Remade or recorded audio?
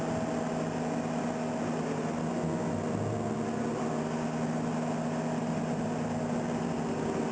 recorded